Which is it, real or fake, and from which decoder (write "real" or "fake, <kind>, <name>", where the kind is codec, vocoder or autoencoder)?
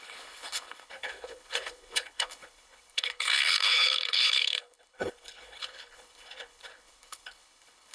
fake, codec, HILCodec